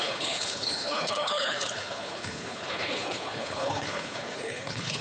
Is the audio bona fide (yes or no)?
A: no